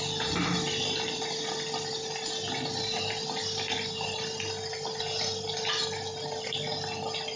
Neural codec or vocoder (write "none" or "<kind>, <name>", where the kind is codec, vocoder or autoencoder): none